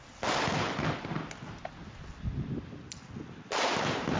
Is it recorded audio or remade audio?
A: recorded